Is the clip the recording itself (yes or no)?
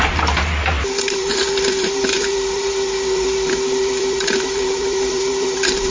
no